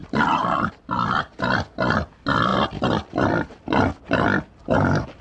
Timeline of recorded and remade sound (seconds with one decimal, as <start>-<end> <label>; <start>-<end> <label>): 0.0-0.7 remade; 0.7-5.2 recorded